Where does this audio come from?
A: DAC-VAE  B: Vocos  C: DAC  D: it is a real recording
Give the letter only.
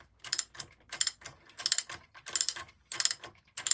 D